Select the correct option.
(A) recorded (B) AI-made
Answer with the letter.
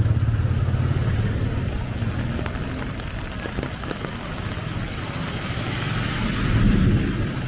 A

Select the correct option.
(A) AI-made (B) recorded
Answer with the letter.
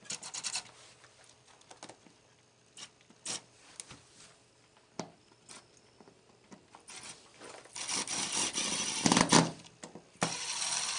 B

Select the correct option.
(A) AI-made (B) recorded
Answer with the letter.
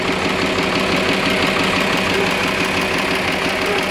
B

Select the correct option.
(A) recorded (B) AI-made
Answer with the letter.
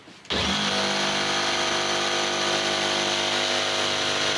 A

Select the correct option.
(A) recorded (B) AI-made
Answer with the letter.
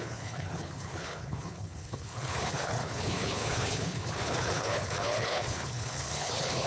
B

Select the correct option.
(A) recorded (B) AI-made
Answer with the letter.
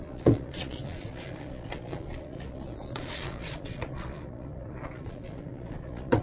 B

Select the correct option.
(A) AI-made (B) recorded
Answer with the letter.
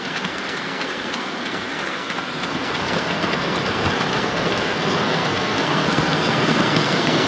A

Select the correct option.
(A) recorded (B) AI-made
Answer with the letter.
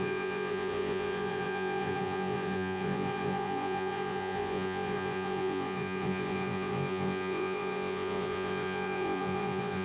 B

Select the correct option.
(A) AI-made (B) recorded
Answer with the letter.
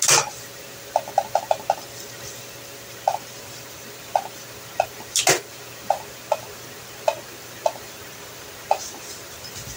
B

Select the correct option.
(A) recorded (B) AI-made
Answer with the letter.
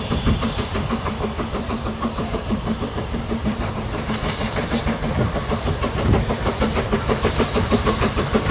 B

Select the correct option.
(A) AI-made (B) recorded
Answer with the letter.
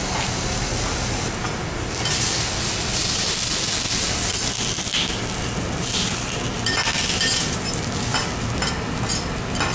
B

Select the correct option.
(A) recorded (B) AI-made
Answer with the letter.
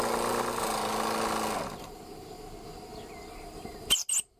A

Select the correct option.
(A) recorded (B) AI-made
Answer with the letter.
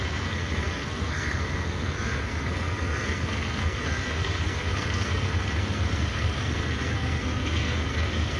B